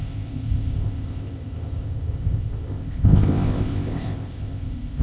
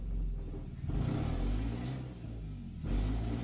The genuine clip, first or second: second